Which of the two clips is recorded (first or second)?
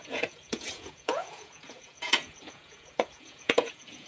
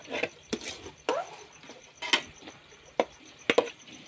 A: second